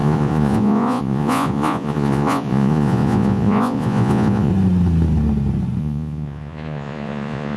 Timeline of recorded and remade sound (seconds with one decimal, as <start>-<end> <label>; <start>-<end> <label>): 0.0-4.5 remade; 4.5-5.8 recorded; 5.8-7.6 remade